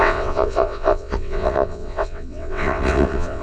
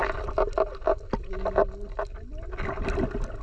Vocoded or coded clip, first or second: first